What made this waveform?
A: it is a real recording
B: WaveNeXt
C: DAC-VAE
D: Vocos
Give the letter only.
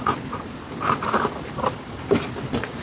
A